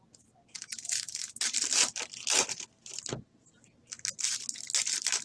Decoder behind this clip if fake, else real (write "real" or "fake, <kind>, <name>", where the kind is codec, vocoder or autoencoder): real